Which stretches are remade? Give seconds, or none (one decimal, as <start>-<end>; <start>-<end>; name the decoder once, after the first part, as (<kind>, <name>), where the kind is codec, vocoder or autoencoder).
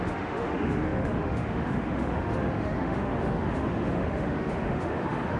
0.0-5.4 (autoencoder, DAC-VAE)